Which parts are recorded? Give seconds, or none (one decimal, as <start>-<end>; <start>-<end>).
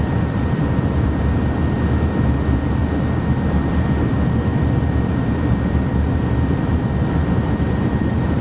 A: 2.8-3.5